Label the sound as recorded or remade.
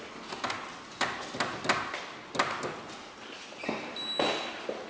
recorded